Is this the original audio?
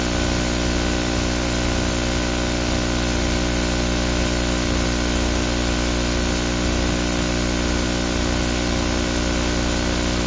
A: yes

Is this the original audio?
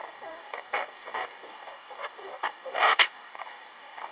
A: no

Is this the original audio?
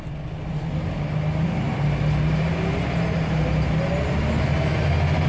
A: yes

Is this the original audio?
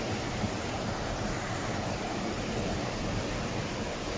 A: no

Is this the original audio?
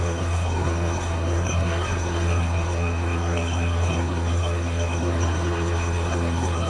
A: no